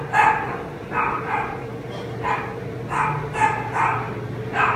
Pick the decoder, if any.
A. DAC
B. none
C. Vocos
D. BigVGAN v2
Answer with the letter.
B